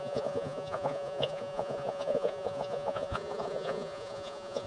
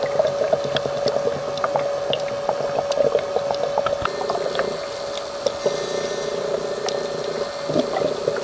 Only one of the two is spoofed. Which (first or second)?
first